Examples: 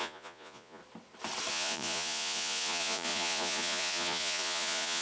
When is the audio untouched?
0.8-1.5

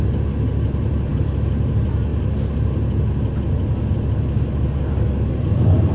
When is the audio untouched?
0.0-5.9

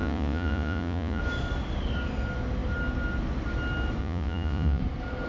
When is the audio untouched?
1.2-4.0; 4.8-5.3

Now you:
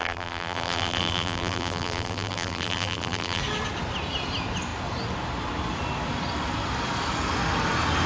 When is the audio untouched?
3.4-8.1

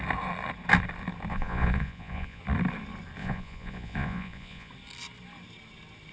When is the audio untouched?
0.0-1.3; 2.4-3.2; 4.7-6.1

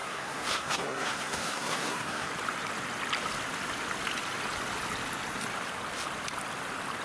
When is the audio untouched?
2.3-7.0

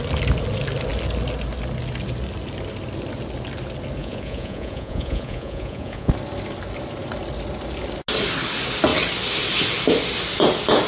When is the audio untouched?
0.0-4.0; 6.1-10.9